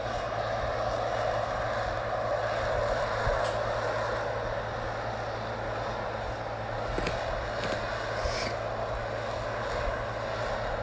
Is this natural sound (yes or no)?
yes